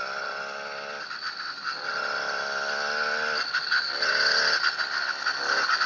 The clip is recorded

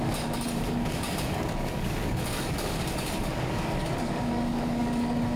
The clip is remade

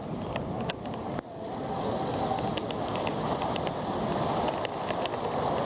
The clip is recorded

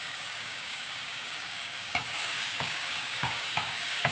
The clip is remade